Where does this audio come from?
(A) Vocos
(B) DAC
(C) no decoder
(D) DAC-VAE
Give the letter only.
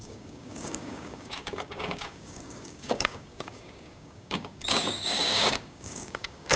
B